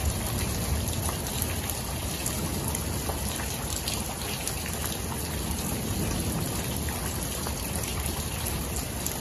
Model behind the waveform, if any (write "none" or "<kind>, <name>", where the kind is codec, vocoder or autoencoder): none